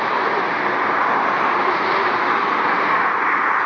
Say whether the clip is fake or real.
real